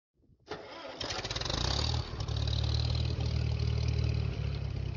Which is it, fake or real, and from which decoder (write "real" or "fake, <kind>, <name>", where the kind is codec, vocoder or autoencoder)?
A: real